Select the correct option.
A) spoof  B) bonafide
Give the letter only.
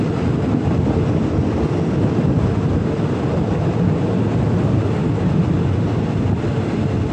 B